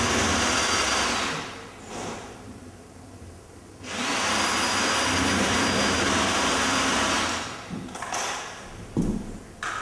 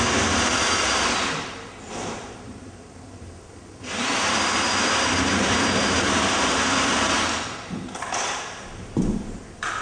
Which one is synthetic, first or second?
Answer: second